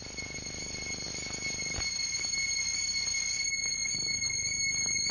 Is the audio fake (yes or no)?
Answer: no